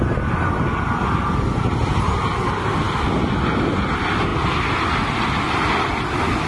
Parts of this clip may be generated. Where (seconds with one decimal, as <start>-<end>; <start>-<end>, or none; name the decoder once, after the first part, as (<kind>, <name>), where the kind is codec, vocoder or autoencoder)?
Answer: none